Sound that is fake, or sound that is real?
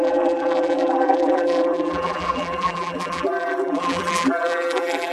fake